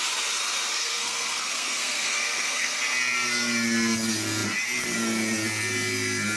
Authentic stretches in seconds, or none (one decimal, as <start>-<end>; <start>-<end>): 0.0-0.8; 2.8-6.4